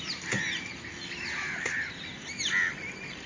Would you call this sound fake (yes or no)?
no